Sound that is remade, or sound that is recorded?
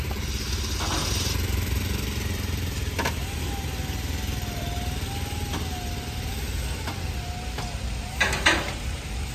recorded